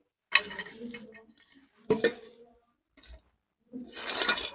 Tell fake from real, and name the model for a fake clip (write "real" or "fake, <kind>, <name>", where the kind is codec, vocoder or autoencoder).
real